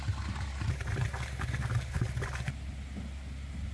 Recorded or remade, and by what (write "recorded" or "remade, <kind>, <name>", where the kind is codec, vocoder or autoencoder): recorded